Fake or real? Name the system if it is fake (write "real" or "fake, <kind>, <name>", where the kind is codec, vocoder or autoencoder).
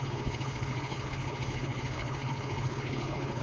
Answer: fake, codec, HILCodec